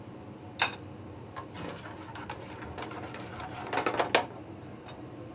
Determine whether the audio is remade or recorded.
recorded